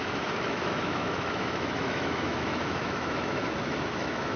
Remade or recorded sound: remade